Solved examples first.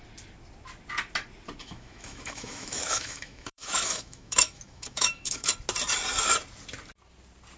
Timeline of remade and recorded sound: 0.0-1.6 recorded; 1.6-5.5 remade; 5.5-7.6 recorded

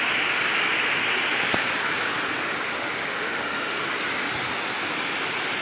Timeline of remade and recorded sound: 0.0-2.7 recorded; 2.7-3.8 remade; 3.8-5.6 recorded